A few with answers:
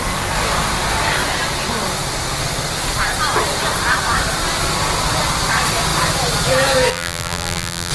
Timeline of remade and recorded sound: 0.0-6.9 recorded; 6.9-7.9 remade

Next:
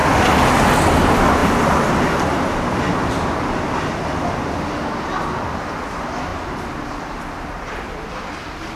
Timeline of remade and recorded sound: 0.0-8.8 recorded